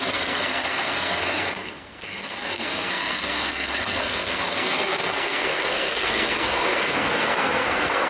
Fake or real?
fake